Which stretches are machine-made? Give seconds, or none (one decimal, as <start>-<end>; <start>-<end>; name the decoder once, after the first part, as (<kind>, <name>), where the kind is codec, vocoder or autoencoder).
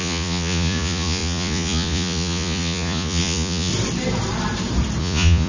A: 0.0-3.7 (vocoder, Vocos); 5.0-5.5